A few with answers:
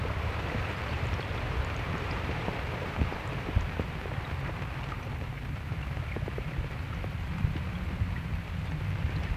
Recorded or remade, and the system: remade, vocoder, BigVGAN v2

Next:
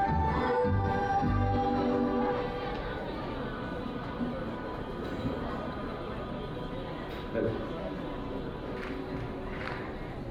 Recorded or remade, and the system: recorded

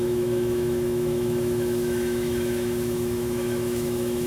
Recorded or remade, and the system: remade, autoencoder, DAC-VAE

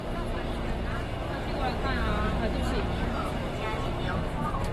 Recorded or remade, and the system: recorded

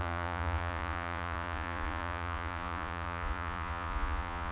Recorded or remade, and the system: remade, vocoder, Vocos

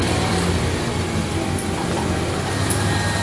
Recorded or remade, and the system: recorded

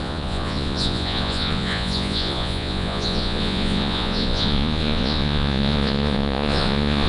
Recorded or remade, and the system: remade, vocoder, Vocos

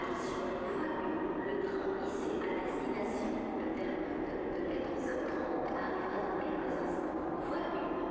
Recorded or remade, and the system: recorded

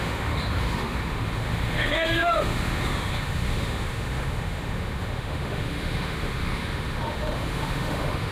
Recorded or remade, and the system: remade, autoencoder, DAC-VAE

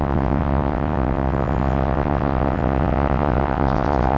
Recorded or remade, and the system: remade, vocoder, WaveNeXt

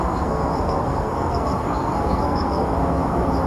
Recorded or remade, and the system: remade, codec, SNAC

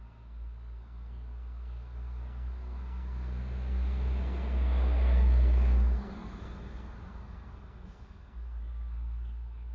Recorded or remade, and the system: remade, codec, SNAC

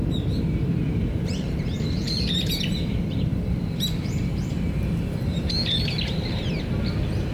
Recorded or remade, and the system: remade, vocoder, BigVGAN v2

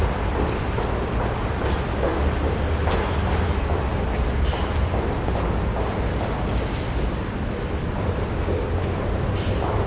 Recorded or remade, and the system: recorded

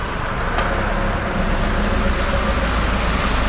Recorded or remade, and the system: recorded